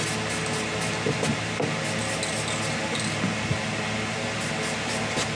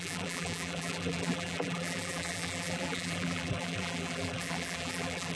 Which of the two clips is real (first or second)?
first